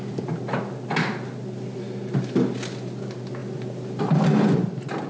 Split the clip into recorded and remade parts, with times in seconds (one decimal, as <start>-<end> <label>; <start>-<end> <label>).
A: 0.0-5.1 recorded